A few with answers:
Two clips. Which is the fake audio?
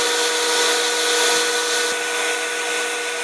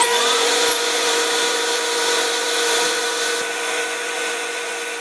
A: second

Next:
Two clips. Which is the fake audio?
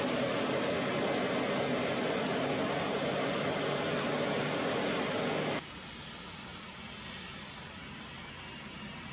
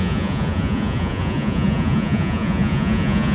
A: second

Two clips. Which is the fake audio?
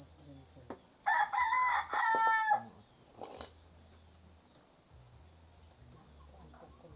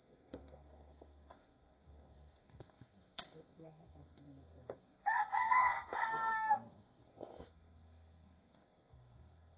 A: second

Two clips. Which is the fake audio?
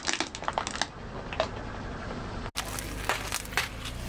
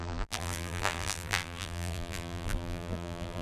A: second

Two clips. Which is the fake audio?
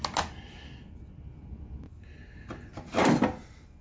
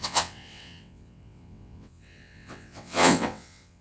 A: second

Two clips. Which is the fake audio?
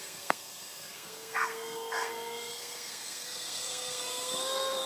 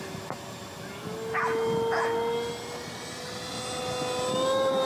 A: first